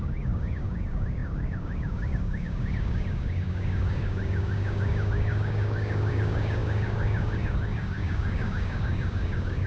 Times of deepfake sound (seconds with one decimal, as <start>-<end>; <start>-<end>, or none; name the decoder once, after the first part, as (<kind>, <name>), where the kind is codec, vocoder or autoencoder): 0.0-9.7 (codec, DAC)